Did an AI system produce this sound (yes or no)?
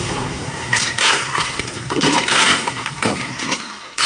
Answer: yes